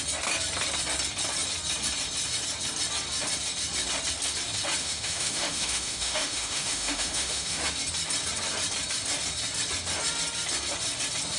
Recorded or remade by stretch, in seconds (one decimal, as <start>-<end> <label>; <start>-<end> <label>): 0.0-4.8 recorded; 4.8-7.6 remade; 7.6-11.4 recorded